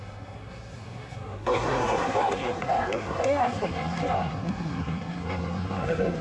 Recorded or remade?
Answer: remade